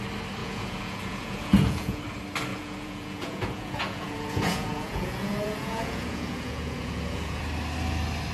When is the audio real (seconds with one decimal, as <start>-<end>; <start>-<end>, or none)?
0.0-0.4; 2.0-2.5; 7.4-8.3